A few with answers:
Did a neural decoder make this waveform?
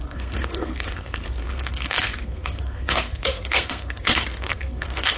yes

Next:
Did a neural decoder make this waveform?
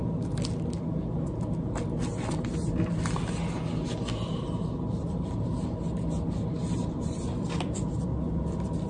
no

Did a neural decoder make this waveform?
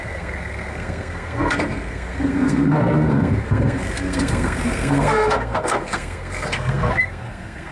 yes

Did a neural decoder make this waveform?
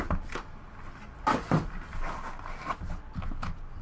no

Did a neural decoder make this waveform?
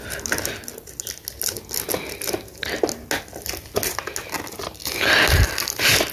no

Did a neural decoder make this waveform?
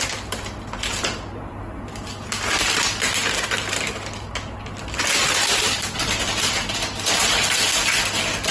no